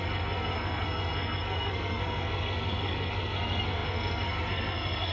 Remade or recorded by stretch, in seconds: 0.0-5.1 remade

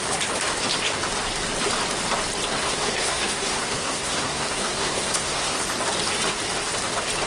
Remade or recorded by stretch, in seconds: 0.0-2.5 recorded; 2.5-5.6 remade; 5.6-7.3 recorded

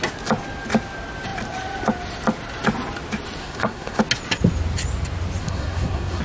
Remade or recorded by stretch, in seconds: 0.0-3.4 recorded; 3.4-4.0 remade; 4.0-5.4 recorded; 5.4-6.2 remade

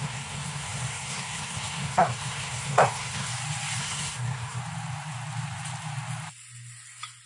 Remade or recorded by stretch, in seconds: 0.0-3.3 remade; 3.3-3.8 recorded; 3.8-4.6 remade; 4.6-7.3 recorded

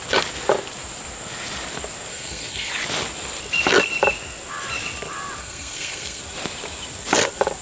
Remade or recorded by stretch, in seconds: 0.0-2.1 recorded; 2.1-2.7 remade; 2.7-5.4 recorded; 5.4-6.2 remade; 6.2-7.6 recorded

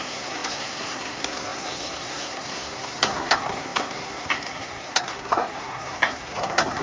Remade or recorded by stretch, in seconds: 0.0-6.8 remade

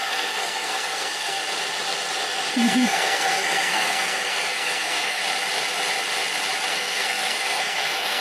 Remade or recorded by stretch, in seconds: 0.0-1.4 remade; 1.4-2.5 recorded; 2.5-5.2 remade; 5.2-6.7 recorded; 6.7-8.2 remade